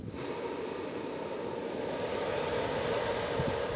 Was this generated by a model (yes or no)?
no